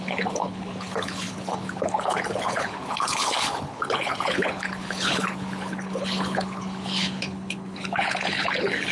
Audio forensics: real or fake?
fake